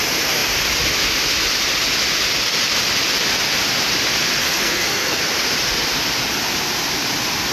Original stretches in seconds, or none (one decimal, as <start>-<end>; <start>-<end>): 0.0-4.4; 5.2-7.5